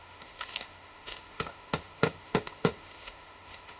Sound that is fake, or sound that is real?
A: fake